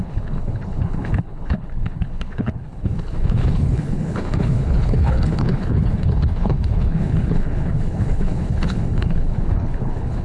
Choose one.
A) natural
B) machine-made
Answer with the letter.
B